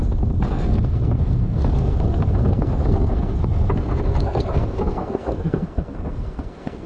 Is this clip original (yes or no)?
no